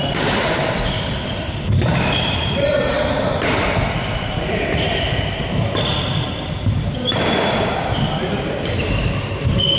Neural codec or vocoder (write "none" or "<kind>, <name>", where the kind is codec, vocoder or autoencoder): vocoder, BigVGAN v2